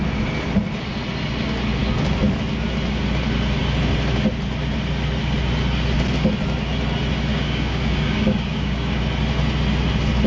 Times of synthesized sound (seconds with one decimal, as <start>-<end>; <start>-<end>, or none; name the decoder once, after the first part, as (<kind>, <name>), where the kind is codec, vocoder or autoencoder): 7.3-9.0 (codec, DAC)